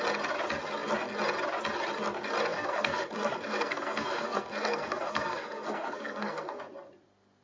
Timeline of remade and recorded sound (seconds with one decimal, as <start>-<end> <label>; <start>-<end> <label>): 0.0-2.5 recorded; 2.5-6.6 remade; 6.6-7.4 recorded